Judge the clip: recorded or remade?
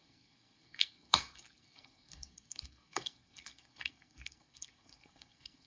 remade